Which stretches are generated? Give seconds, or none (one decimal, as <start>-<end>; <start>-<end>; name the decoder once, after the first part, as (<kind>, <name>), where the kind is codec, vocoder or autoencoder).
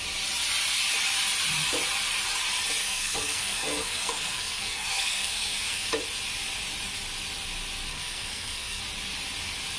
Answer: 2.8-5.9 (codec, SNAC); 7.9-8.8